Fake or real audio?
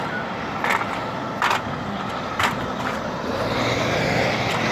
real